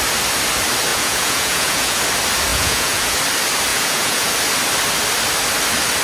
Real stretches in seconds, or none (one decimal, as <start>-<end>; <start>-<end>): 0.0-0.9; 2.0-2.5; 3.2-3.7; 4.3-6.0